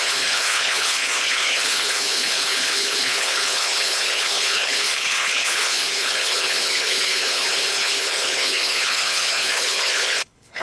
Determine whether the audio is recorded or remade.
remade